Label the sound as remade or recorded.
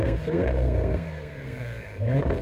remade